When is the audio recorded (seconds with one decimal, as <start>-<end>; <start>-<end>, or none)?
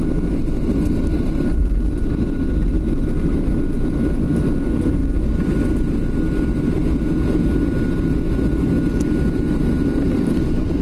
0.0-1.6; 2.2-10.8